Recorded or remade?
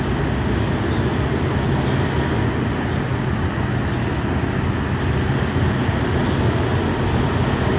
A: recorded